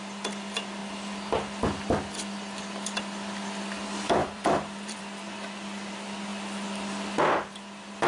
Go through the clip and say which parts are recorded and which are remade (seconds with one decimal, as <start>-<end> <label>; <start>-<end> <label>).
0.0-4.2 recorded; 4.2-5.0 remade; 5.0-8.1 recorded

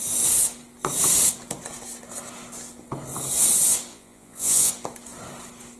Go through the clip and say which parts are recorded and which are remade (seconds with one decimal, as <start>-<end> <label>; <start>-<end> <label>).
0.0-3.9 recorded; 3.9-4.7 remade; 4.7-5.8 recorded